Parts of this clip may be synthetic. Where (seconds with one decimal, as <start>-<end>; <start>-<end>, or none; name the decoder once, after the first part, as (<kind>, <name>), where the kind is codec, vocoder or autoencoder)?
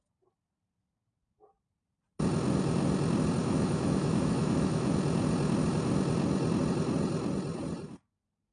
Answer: 3.4-4.9 (autoencoder, DAC-VAE)